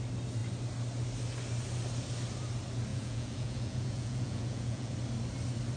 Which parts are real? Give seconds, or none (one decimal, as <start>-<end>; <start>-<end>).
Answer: 0.0-2.9; 4.9-5.8